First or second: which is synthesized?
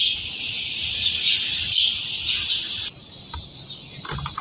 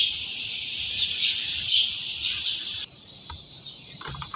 second